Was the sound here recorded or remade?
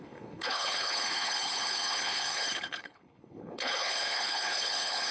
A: remade